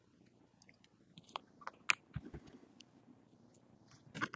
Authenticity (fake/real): real